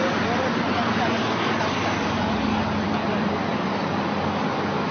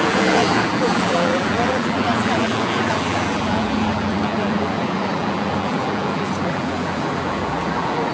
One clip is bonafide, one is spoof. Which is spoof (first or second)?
second